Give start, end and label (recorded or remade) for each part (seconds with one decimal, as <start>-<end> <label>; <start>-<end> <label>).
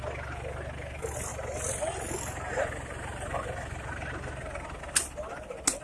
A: 0.0-5.8 recorded